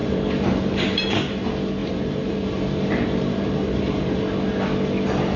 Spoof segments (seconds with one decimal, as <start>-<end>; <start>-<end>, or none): 0.0-1.3; 1.8-4.2